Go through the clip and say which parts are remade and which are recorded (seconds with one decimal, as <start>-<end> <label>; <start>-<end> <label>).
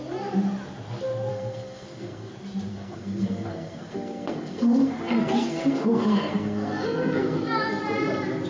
0.0-1.3 recorded; 1.3-2.3 remade; 2.3-2.7 recorded; 2.7-7.8 remade; 7.8-8.5 recorded